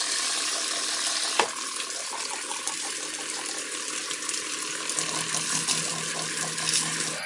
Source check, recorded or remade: recorded